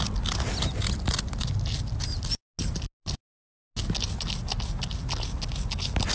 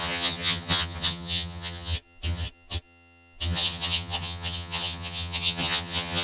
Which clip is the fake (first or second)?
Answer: second